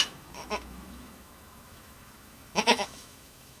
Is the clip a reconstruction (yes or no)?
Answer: yes